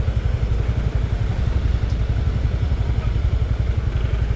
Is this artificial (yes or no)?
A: no